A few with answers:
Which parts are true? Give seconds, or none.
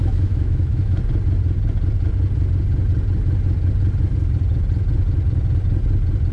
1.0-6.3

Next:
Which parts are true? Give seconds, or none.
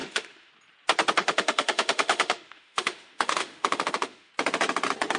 0.5-1.2; 4.3-5.2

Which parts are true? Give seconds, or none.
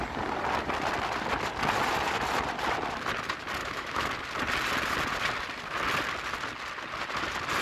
0.0-3.6; 4.1-7.6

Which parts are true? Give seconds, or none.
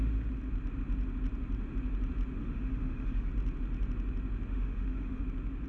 0.0-2.4; 3.3-4.5; 5.2-5.7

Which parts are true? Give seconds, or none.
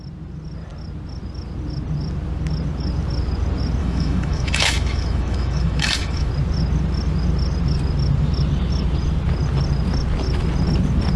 0.0-3.8; 6.3-11.2